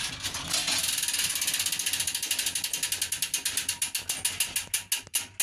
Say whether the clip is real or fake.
real